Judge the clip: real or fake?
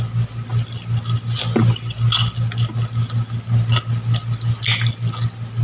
real